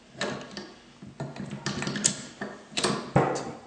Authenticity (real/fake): real